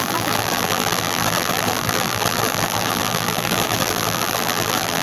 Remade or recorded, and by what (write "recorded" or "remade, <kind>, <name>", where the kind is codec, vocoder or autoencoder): remade, vocoder, BigVGAN v2